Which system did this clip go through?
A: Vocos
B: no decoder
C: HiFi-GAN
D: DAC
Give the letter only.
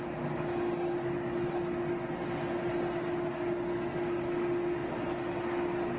B